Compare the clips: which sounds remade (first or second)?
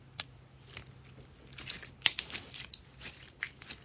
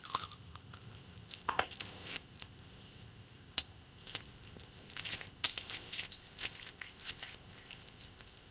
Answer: second